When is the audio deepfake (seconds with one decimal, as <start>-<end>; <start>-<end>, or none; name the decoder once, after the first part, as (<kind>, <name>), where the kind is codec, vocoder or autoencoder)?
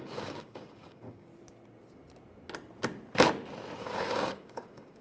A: 0.0-1.3 (codec, DAC); 3.8-5.0